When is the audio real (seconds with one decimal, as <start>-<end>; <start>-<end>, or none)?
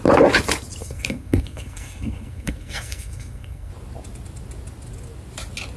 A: 0.0-0.8; 3.7-5.8